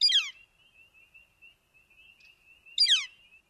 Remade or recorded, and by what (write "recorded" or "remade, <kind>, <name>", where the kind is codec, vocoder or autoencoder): recorded